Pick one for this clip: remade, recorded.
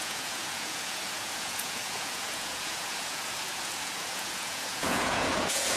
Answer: remade